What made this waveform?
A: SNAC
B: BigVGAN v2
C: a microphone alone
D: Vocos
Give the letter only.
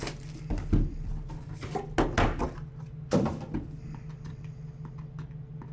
C